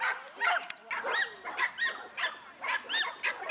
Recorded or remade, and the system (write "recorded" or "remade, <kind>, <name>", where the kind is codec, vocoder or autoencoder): recorded